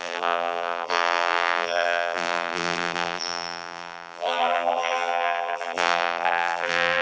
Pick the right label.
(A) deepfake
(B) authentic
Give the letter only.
A